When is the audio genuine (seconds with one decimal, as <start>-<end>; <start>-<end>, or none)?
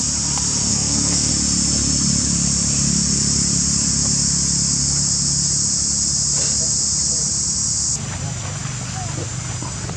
0.0-0.7; 1.3-10.0